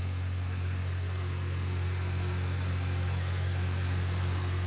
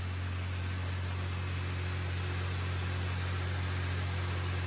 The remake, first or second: first